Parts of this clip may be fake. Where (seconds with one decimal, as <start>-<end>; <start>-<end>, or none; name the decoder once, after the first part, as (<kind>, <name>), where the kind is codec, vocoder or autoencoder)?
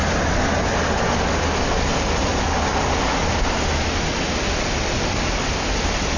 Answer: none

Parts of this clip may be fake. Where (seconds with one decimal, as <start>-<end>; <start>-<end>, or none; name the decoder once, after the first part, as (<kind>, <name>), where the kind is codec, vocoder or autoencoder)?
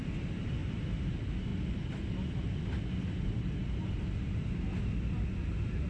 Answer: 0.6-1.1 (vocoder, BigVGAN v2); 1.5-4.0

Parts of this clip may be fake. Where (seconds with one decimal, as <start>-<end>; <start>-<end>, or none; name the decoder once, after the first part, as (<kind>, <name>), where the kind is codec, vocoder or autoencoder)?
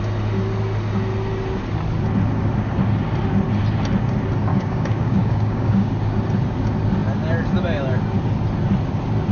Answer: 4.5-5.9 (codec, DAC)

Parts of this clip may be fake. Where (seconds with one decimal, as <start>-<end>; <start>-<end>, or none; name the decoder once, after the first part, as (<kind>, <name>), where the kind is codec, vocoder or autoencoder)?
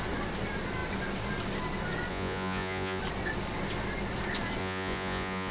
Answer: 2.1-3.0 (vocoder, Vocos); 4.6-5.5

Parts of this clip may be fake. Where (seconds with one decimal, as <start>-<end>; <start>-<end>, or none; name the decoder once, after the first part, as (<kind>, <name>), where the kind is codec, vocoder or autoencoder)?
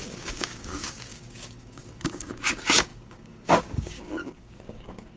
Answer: 0.0-5.2 (codec, DAC)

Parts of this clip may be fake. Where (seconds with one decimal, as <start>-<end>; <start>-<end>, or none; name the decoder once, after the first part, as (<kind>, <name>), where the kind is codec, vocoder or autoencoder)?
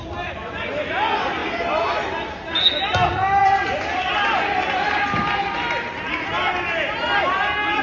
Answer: 3.4-4.1 (vocoder, BigVGAN v2)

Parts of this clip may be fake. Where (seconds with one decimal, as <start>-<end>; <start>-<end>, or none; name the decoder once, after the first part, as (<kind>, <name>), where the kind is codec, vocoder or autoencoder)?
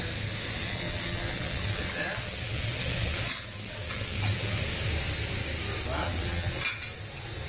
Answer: 0.6-4.6 (vocoder, WaveNeXt); 6.0-6.6